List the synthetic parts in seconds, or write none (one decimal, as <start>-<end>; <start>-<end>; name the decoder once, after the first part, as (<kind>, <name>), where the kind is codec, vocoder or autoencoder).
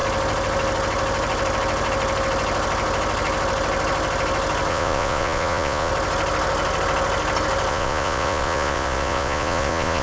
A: 4.7-5.9 (vocoder, Vocos); 7.7-10.0